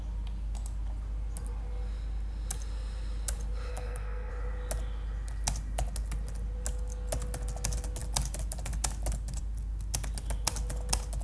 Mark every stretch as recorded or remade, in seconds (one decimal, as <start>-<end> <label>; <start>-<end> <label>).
0.0-3.7 recorded; 3.7-4.3 remade; 4.3-11.2 recorded